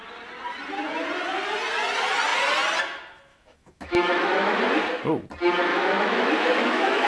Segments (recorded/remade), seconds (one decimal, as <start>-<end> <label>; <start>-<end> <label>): 0.0-3.3 recorded; 3.3-4.6 remade; 4.6-5.7 recorded; 5.7-7.1 remade